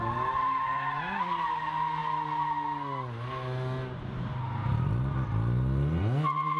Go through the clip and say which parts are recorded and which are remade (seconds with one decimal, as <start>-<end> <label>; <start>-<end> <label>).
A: 0.0-6.6 recorded